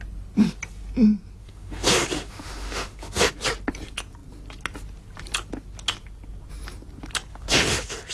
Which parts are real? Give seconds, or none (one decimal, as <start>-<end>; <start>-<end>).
0.0-1.4; 3.3-7.3